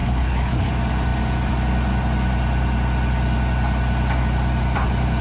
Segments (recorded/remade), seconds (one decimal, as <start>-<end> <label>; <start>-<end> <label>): 0.0-0.7 remade; 0.7-5.2 recorded